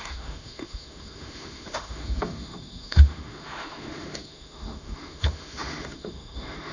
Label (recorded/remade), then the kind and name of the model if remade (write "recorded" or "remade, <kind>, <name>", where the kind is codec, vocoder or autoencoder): remade, autoencoder, DAC-VAE